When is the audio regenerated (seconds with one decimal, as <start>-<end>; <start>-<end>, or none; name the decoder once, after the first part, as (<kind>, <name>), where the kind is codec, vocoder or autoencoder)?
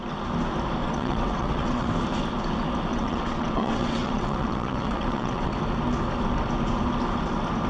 0.8-1.9 (vocoder, WaveNeXt); 2.9-5.5